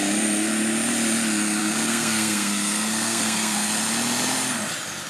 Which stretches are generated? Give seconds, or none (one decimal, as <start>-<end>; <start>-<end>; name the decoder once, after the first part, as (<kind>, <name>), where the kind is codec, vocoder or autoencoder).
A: 1.6-3.7 (codec, SNAC)